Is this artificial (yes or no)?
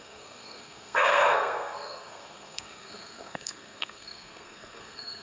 yes